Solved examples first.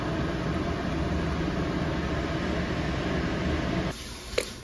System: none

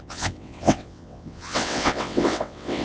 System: vocoder, WaveNeXt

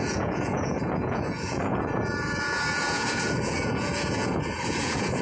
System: vocoder, Vocos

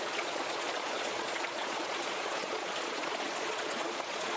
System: vocoder, Vocos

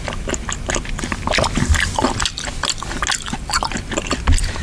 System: none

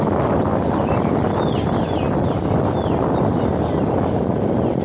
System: none